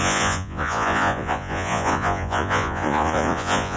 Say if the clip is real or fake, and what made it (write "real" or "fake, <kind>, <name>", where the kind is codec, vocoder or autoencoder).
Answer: fake, vocoder, Vocos